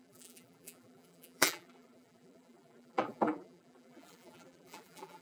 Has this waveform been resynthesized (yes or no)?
yes